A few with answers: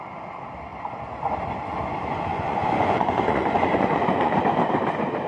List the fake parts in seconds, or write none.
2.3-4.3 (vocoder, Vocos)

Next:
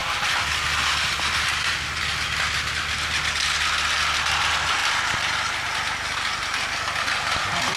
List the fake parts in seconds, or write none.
none